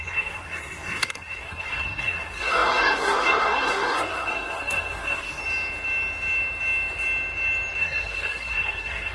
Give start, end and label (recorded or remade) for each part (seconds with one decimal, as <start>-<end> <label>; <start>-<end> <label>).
0.0-5.4 remade; 5.4-7.8 recorded; 7.8-9.1 remade